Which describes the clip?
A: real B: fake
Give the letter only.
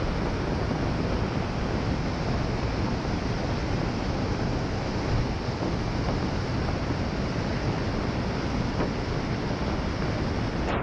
A